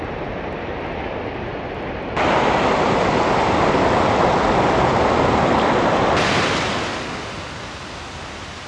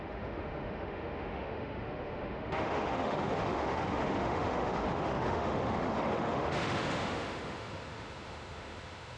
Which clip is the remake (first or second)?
second